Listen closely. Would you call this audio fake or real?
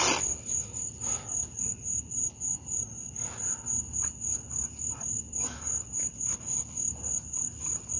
real